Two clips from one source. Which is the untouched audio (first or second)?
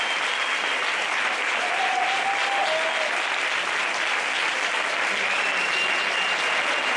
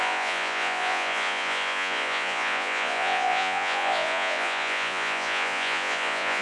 first